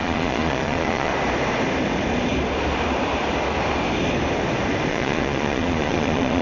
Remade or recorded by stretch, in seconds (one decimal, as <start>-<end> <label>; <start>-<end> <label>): 0.0-1.1 remade; 1.1-4.9 recorded; 4.9-6.4 remade